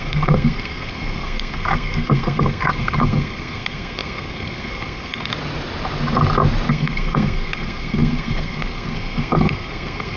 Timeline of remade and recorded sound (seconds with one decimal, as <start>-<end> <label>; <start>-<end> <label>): 0.0-5.3 remade; 5.3-6.7 recorded; 6.7-10.2 remade